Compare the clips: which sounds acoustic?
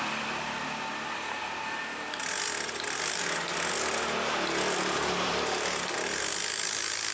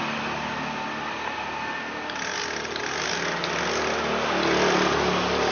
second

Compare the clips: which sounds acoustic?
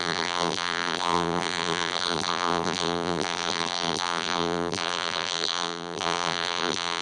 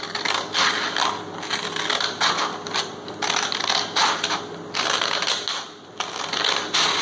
second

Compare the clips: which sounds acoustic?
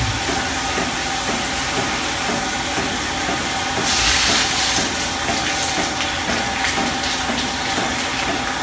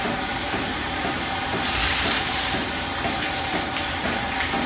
first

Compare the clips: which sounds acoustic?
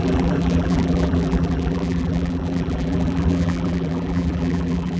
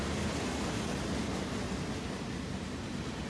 second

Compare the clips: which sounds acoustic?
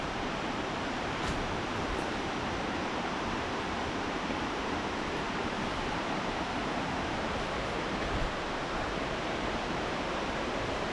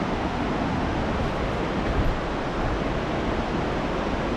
second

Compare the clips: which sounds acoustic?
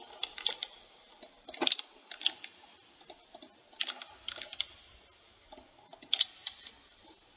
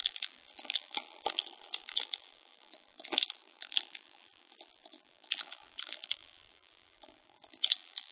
first